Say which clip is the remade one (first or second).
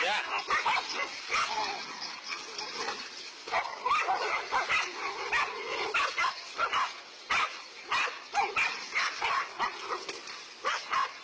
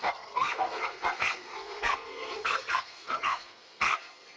second